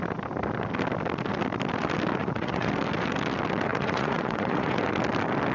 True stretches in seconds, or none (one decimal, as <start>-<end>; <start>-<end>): 0.0-2.2; 2.7-3.7; 4.8-5.5